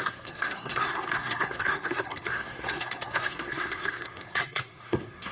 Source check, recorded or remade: remade